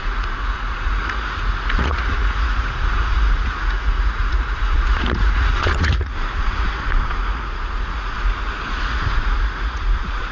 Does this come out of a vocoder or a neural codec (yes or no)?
yes